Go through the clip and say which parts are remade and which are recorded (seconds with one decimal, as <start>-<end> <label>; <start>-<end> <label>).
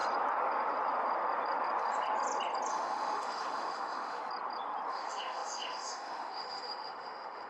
0.0-2.7 recorded; 2.7-4.2 remade; 4.2-4.9 recorded; 4.9-7.5 remade